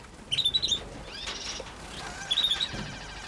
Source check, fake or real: real